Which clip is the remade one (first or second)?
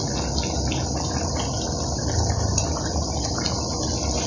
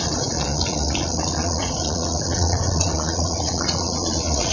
second